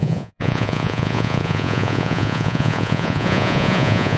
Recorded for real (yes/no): no